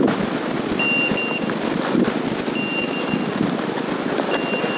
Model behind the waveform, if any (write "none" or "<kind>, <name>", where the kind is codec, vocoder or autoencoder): none